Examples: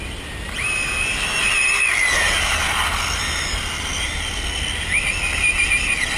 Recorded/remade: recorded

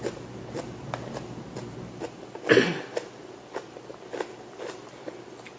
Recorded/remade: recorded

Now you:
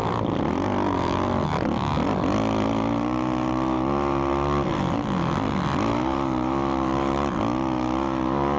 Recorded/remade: recorded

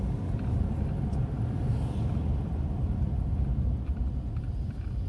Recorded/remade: recorded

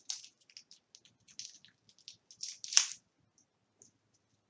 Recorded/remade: recorded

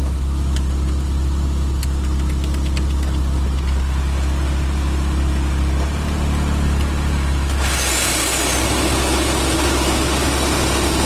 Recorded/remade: recorded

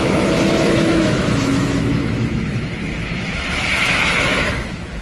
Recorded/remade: remade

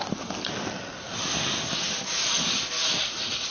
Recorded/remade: recorded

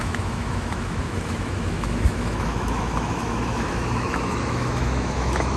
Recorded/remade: remade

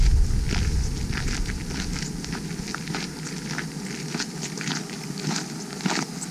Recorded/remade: recorded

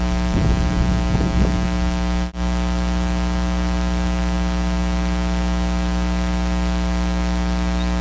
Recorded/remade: recorded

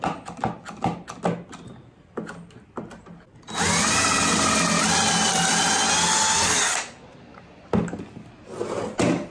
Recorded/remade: recorded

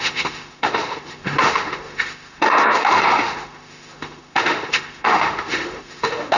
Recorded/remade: remade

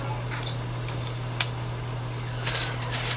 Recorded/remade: recorded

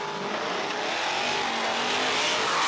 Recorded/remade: recorded